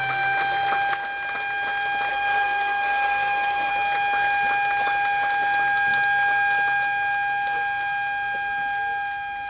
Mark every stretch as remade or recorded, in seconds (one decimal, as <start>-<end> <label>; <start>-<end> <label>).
0.0-2.1 recorded; 2.1-3.7 remade; 3.7-9.5 recorded